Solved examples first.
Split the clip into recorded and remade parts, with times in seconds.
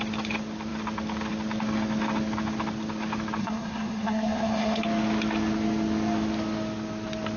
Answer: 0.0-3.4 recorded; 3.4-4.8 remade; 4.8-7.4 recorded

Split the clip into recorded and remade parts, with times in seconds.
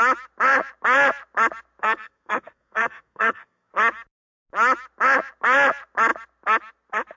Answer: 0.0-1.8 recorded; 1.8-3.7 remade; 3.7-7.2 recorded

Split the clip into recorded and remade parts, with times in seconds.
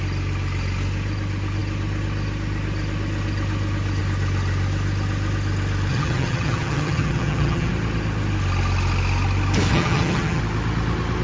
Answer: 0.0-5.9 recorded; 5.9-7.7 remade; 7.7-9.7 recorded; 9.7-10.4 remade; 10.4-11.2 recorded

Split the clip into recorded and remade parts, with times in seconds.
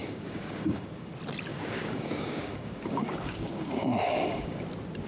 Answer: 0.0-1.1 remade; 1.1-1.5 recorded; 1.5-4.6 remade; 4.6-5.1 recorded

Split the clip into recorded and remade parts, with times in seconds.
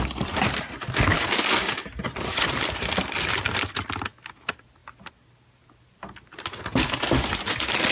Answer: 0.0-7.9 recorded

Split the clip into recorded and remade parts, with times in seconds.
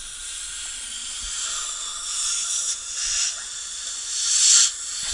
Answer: 0.0-5.1 recorded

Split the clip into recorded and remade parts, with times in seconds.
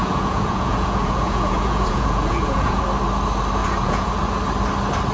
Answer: 0.0-2.8 remade; 2.8-3.6 recorded; 3.6-4.1 remade; 4.1-5.1 recorded